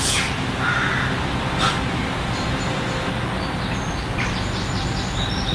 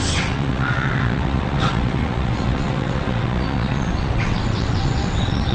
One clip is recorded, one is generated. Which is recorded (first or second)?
first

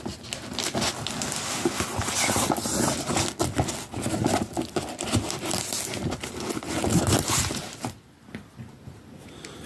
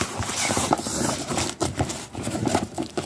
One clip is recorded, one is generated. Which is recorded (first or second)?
first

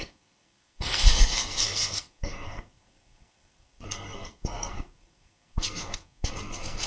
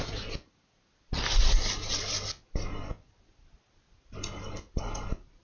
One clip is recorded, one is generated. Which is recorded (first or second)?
second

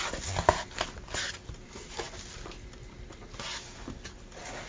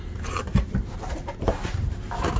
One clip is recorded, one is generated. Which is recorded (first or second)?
first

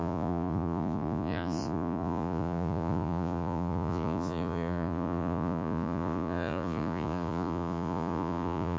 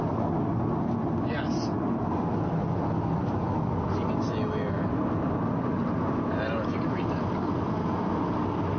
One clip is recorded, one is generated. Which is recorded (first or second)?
second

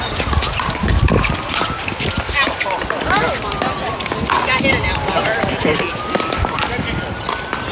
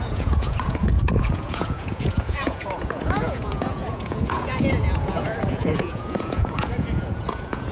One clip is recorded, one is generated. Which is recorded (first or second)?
first